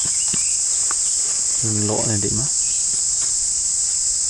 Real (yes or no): yes